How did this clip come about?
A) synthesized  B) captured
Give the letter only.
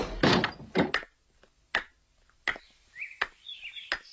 B